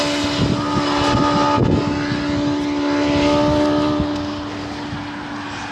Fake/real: real